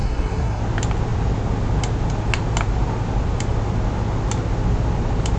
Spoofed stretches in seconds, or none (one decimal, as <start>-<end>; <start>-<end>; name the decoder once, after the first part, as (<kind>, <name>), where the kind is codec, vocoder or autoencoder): 0.0-0.6 (codec, SNAC)